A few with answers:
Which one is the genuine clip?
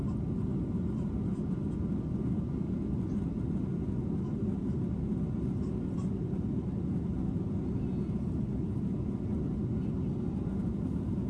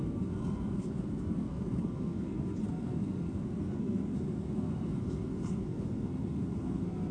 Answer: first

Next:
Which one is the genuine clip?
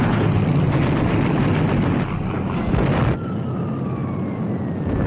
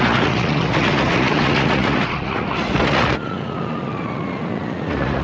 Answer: first